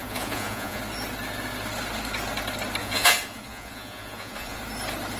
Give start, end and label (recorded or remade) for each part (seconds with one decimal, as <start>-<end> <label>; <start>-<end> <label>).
0.0-0.8 remade; 0.8-2.8 recorded; 2.8-4.6 remade; 4.6-5.2 recorded